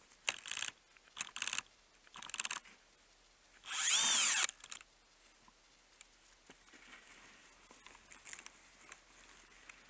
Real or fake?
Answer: real